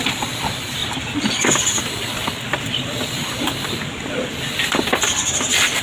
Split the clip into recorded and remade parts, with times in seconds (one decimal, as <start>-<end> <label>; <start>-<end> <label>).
0.0-0.8 recorded; 0.8-3.7 remade; 3.7-5.8 recorded